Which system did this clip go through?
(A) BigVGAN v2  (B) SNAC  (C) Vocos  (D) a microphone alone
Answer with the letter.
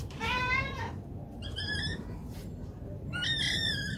A